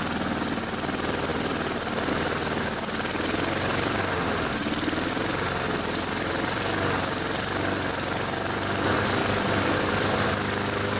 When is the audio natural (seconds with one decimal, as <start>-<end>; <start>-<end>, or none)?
0.0-11.0